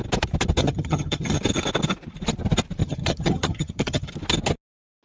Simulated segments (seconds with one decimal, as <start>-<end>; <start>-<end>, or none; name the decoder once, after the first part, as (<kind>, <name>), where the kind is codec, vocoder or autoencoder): 0.6-1.4 (vocoder, HiFi-GAN); 2.8-4.1